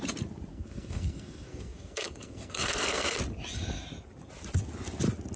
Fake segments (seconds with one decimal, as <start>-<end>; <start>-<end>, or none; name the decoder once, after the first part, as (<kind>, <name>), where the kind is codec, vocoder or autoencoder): 0.5-3.2 (codec, SNAC)